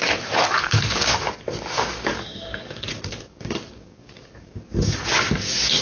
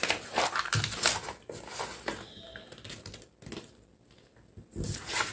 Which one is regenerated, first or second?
first